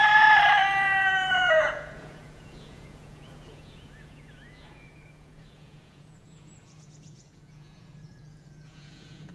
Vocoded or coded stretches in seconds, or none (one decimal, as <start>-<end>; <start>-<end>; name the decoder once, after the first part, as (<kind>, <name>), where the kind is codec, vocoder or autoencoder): 1.3-9.3 (vocoder, Vocos)